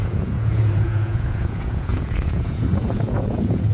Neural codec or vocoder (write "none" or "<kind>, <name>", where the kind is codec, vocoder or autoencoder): vocoder, Vocos